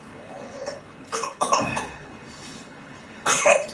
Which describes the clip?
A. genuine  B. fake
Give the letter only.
B